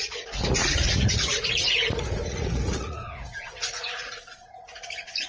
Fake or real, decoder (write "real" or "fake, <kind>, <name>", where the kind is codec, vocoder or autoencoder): fake, vocoder, Vocos